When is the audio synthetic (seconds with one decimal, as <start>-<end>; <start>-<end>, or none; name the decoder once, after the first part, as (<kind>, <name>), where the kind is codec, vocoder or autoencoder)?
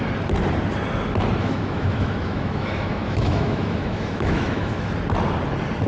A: 1.4-4.9 (autoencoder, DAC-VAE)